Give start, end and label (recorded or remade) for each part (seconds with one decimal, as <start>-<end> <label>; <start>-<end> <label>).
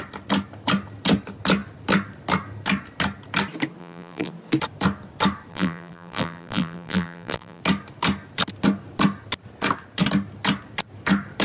0.0-3.8 recorded; 3.8-4.3 remade; 4.3-5.5 recorded; 5.5-7.6 remade; 7.6-11.4 recorded